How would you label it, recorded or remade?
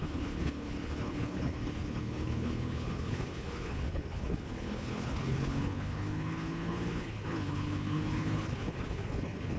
remade